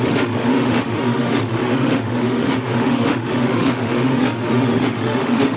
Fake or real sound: fake